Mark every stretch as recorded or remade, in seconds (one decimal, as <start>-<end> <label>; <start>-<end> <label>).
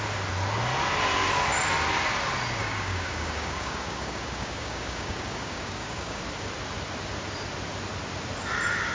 0.0-2.6 recorded; 2.6-6.2 remade; 6.2-8.9 recorded